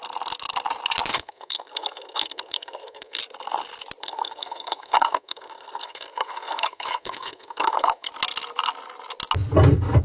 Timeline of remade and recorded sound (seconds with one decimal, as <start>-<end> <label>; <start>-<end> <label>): 0.0-1.1 recorded; 1.1-3.2 remade; 3.2-4.0 recorded; 4.0-8.1 remade; 8.1-10.0 recorded